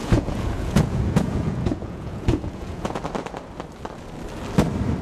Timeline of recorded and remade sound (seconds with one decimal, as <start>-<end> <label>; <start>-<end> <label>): 0.0-3.0 remade; 3.0-5.0 recorded